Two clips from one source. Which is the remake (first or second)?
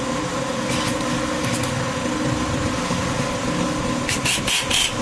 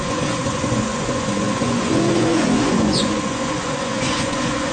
second